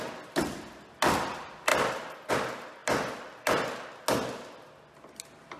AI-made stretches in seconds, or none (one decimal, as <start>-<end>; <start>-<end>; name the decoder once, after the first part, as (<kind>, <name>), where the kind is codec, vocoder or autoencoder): none